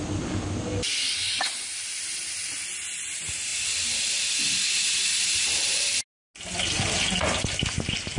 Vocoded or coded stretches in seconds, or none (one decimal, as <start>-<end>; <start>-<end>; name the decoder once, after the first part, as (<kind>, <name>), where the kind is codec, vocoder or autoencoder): 0.7-2.5 (vocoder, BigVGAN v2)